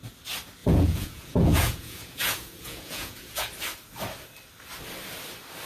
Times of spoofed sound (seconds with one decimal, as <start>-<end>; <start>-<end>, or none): 0.6-3.5